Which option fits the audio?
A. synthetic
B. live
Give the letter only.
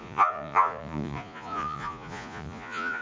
A